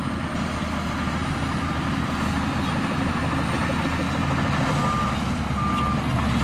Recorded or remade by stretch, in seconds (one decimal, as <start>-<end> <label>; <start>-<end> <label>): 0.0-6.4 recorded